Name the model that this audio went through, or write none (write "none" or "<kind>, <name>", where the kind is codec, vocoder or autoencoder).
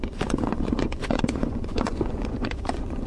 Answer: vocoder, Vocos